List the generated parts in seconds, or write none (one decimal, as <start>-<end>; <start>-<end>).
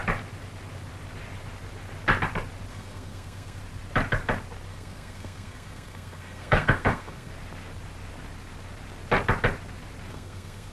2.7-3.6; 4.7-7.3; 10.1-10.7